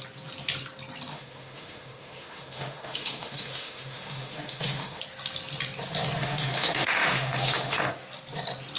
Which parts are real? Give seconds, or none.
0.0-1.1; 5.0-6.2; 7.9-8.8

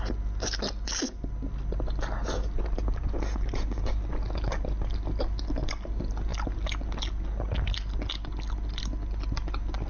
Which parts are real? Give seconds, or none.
0.0-9.9

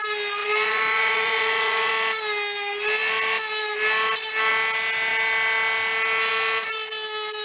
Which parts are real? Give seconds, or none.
0.0-0.4; 1.9-7.4

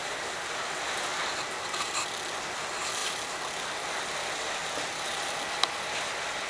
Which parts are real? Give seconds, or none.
0.0-6.5

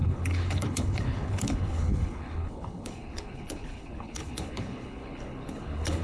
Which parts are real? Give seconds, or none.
none

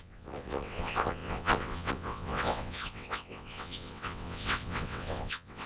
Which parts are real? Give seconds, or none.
none

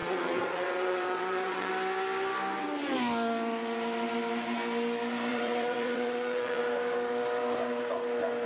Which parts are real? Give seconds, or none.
1.7-5.3; 6.6-8.5